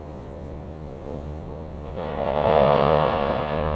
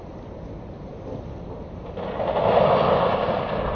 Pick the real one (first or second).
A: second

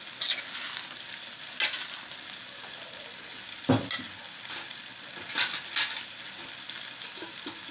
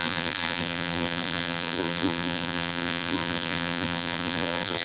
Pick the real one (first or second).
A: first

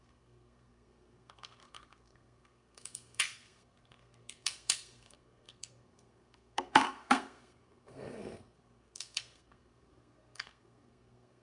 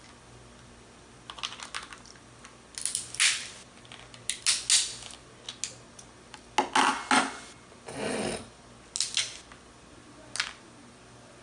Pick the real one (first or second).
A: second